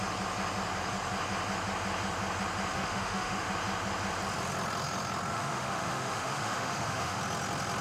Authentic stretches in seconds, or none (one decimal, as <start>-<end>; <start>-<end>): 0.0-2.7; 3.5-5.3; 7.2-7.8